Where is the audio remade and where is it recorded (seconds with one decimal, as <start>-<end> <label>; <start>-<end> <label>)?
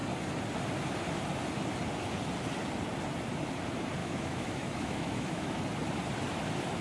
0.0-4.0 recorded; 4.0-5.6 remade; 5.6-6.8 recorded